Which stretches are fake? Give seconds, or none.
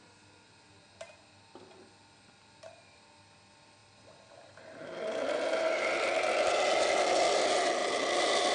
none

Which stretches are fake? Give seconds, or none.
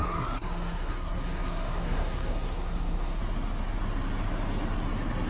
0.0-3.2 (codec, SNAC)